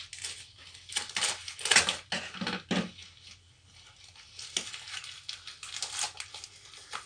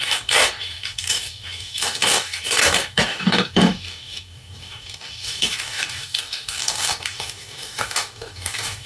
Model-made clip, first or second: second